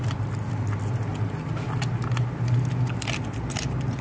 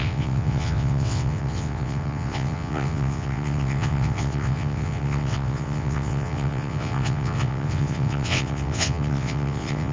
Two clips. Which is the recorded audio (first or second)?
first